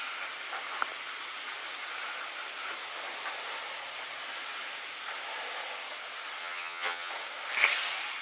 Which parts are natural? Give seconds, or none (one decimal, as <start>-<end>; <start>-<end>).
0.0-6.4; 7.1-8.2